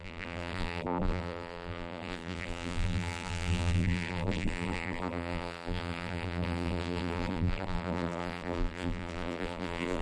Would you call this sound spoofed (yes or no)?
yes